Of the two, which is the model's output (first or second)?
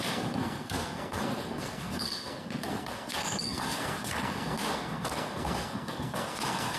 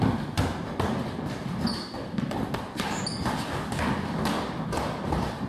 first